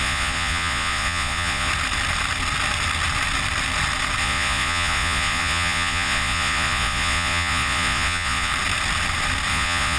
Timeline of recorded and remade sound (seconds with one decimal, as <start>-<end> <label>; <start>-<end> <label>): 0.0-1.7 remade; 1.7-4.2 recorded; 4.2-8.5 remade; 8.5-9.5 recorded; 9.5-10.0 remade